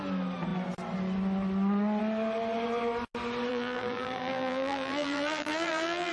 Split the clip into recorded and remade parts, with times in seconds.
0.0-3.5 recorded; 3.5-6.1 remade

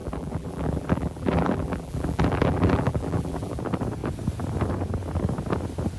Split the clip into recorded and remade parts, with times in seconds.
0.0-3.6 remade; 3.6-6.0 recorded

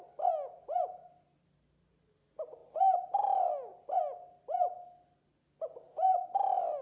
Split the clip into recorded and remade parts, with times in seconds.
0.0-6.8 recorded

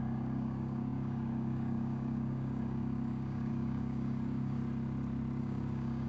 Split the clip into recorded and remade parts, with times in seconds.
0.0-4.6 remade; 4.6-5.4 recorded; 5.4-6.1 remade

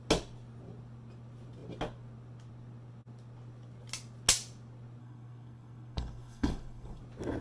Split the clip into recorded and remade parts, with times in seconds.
0.0-5.0 recorded; 5.0-7.0 remade; 7.0-7.4 recorded